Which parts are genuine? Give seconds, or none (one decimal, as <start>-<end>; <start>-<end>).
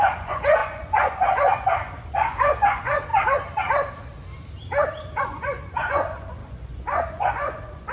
3.1-5.2